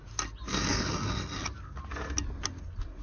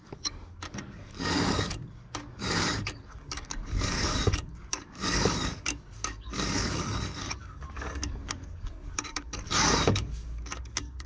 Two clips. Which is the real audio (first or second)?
first